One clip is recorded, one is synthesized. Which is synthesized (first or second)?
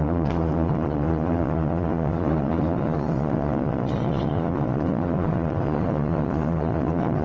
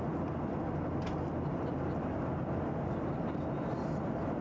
first